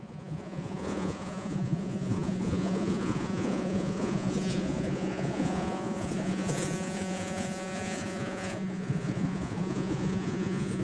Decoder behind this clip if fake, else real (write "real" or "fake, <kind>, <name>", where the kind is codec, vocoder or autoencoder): fake, vocoder, Vocos